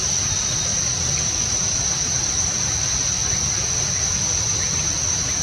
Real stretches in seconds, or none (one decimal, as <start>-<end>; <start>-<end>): 0.0-0.7; 2.4-5.4